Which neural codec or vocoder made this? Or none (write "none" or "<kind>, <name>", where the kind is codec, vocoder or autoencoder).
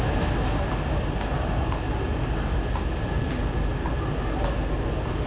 none